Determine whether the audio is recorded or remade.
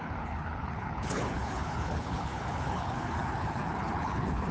remade